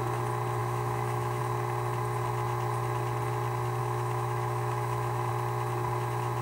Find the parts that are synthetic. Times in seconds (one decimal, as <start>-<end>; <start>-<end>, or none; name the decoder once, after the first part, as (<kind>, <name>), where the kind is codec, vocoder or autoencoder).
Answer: 0.6-1.4 (autoencoder, DAC-VAE); 3.8-5.3